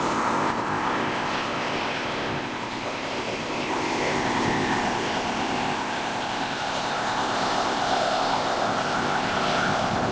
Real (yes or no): no